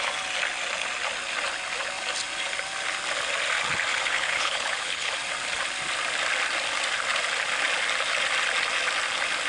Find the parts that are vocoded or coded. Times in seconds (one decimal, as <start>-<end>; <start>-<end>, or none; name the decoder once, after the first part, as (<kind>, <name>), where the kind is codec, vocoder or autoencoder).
3.9-5.1 (codec, HILCodec)